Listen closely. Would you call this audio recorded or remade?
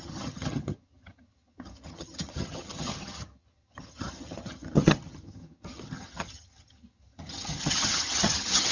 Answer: remade